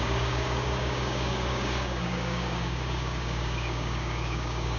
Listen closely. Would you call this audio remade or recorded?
remade